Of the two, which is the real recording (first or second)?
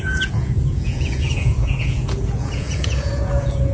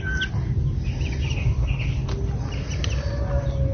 second